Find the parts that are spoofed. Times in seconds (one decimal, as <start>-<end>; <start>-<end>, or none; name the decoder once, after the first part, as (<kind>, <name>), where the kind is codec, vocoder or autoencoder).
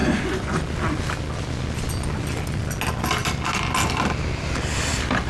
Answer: 0.0-0.6 (vocoder, Vocos)